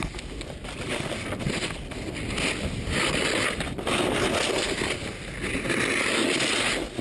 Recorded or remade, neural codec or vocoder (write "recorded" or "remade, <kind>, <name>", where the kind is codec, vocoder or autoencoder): recorded